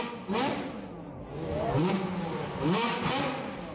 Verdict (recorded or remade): recorded